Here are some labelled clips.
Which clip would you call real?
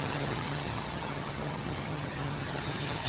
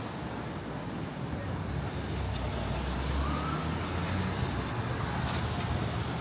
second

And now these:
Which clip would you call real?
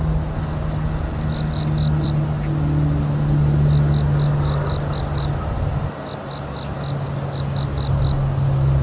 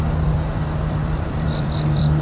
first